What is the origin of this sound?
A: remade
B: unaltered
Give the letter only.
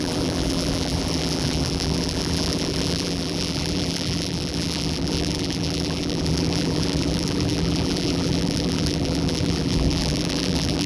A